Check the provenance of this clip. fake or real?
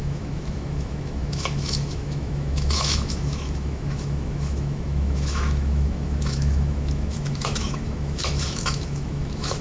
fake